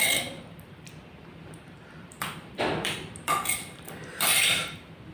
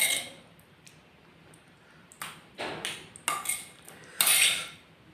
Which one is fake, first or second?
first